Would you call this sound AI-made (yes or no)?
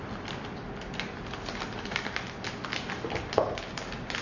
no